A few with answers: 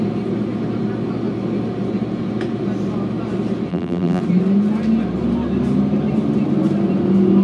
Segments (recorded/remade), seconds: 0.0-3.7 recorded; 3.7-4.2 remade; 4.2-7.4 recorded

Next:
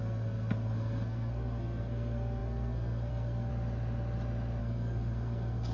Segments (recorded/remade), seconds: 0.0-3.5 remade; 3.5-4.6 recorded; 4.6-5.7 remade

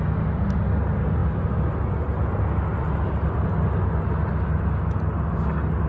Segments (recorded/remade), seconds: 0.0-5.9 recorded

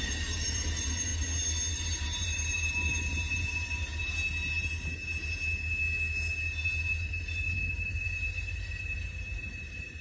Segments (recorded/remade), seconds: 0.0-1.1 remade; 1.1-1.7 recorded; 1.7-3.9 remade; 3.9-7.7 recorded; 7.7-10.0 remade